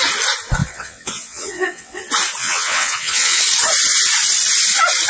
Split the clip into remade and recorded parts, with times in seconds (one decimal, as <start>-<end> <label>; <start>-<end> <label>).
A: 0.0-0.6 recorded; 0.6-2.0 remade; 2.0-2.4 recorded; 2.4-3.4 remade; 3.4-5.1 recorded